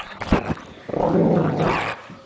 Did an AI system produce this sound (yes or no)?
no